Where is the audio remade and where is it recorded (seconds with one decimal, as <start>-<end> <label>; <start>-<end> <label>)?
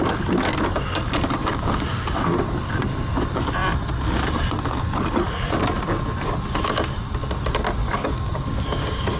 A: 0.0-1.5 recorded; 1.5-2.4 remade; 2.4-7.8 recorded; 7.8-9.2 remade